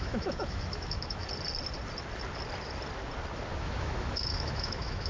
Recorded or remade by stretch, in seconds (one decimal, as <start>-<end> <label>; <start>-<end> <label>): 0.0-1.2 remade; 1.2-3.5 recorded; 3.5-5.1 remade